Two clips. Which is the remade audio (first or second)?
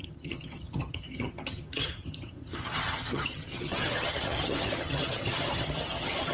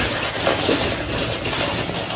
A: first